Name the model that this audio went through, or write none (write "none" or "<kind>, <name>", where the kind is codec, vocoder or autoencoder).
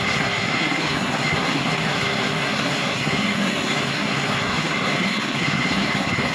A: codec, SNAC